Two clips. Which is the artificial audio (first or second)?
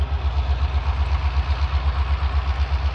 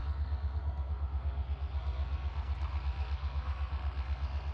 second